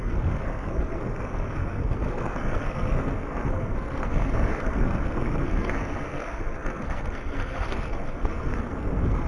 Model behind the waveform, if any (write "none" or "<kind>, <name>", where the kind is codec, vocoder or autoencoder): codec, SNAC